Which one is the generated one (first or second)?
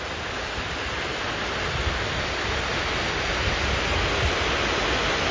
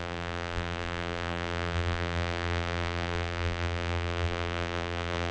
second